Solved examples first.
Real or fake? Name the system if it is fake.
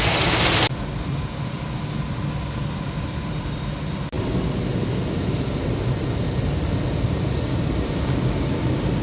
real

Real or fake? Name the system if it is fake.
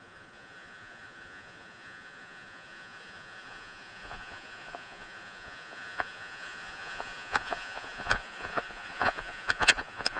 fake, vocoder, Vocos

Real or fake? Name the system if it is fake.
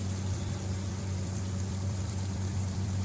fake, vocoder, BigVGAN v2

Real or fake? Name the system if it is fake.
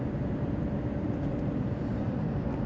fake, vocoder, BigVGAN v2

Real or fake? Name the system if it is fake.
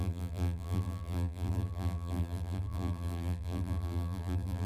fake, vocoder, BigVGAN v2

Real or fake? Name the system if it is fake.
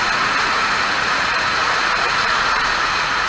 fake, vocoder, Vocos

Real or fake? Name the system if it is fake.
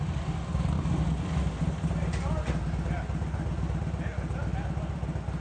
real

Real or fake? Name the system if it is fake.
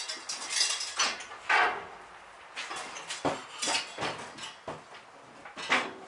real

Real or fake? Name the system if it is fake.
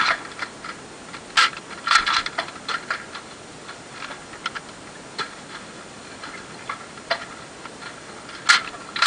real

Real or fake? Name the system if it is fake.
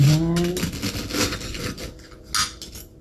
real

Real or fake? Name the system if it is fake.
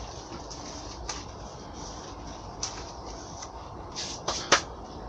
fake, vocoder, BigVGAN v2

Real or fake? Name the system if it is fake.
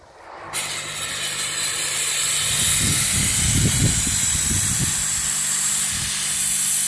real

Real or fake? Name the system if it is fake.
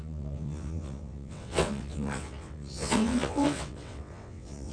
fake, vocoder, WaveNeXt